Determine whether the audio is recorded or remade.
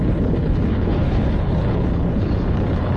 remade